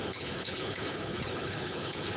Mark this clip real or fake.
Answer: fake